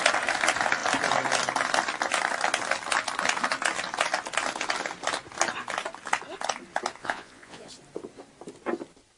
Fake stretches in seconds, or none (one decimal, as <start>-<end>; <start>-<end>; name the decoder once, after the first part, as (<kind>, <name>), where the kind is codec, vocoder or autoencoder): 7.0-7.7 (vocoder, Vocos)